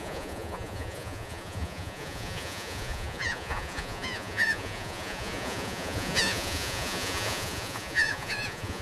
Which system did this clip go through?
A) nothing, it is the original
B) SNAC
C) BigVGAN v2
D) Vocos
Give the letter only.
D